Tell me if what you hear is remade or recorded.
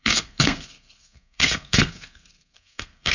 remade